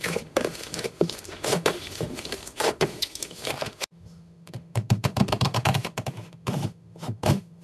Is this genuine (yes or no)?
no